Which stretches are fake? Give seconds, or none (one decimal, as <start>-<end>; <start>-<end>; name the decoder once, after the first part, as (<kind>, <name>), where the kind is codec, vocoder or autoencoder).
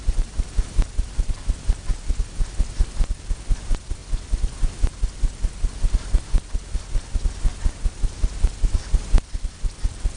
0.0-4.0 (vocoder, BigVGAN v2); 7.9-10.2